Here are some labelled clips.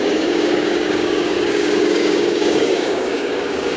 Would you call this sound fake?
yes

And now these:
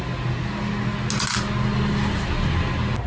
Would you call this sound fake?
no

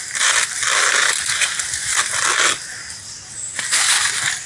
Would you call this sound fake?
no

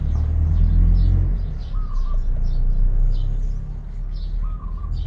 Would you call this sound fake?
no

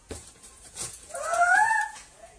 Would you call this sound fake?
yes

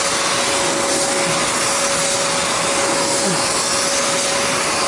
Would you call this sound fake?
no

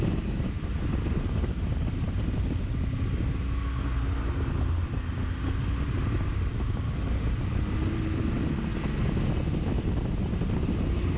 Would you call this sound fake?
no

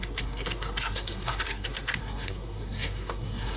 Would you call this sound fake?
yes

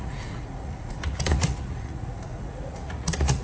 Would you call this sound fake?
yes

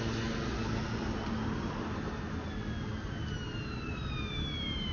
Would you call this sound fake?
no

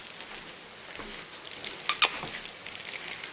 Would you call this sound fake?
no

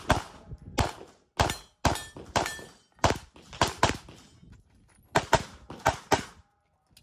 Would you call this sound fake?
no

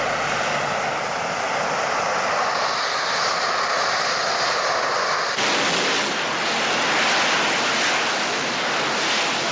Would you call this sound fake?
no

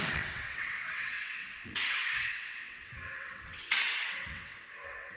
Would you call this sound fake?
yes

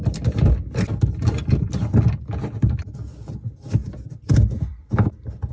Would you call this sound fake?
no